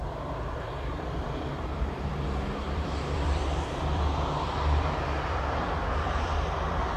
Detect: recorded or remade remade